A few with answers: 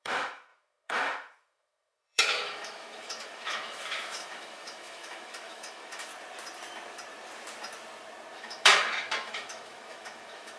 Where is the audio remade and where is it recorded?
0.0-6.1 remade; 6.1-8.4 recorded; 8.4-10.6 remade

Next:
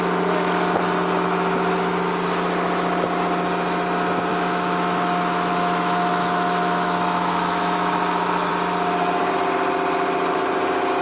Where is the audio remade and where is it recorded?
0.0-4.3 recorded; 4.3-8.5 remade; 8.5-11.0 recorded